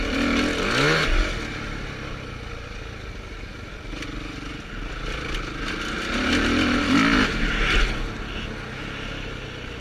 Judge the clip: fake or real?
real